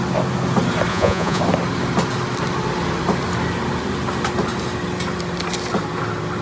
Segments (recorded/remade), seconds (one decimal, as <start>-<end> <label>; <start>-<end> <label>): 0.0-0.9 recorded; 0.9-1.4 remade; 1.4-6.4 recorded